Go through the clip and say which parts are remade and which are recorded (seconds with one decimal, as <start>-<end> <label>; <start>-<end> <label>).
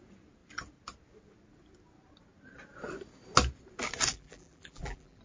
0.0-4.1 recorded; 4.1-5.2 remade